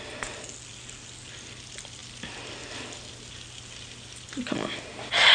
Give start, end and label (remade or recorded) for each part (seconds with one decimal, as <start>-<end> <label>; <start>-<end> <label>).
0.0-5.3 recorded